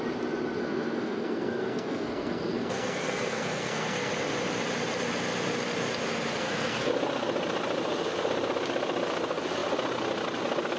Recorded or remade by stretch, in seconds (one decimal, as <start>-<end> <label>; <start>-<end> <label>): 0.0-0.6 recorded; 0.6-4.1 remade; 4.1-6.4 recorded; 6.4-6.9 remade; 6.9-10.8 recorded